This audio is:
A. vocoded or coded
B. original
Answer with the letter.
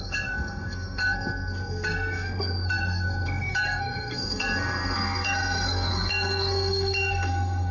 A